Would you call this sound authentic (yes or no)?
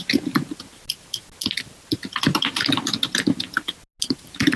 yes